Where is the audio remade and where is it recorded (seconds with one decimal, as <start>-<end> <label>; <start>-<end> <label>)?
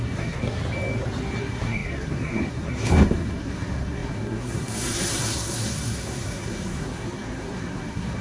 0.0-0.6 remade; 0.6-1.4 recorded; 1.4-8.2 remade